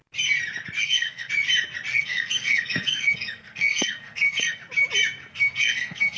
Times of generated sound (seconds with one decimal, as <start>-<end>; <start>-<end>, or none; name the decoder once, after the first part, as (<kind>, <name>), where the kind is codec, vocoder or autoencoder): 0.8-1.3 (codec, SNAC); 1.9-4.6; 5.3-6.2